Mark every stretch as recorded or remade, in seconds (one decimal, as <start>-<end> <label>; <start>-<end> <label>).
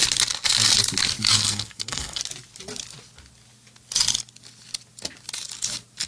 0.0-1.3 recorded; 1.3-2.2 remade; 2.2-6.1 recorded